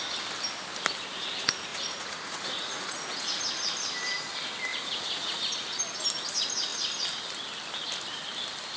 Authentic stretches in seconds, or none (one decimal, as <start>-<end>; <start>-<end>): 0.0-1.7; 3.4-4.7; 5.4-8.8